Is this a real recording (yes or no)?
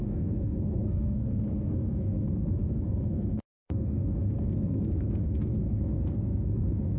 no